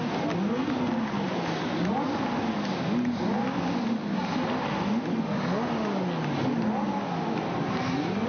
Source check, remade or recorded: recorded